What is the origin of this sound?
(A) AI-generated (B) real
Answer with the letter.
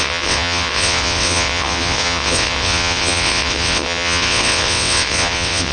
A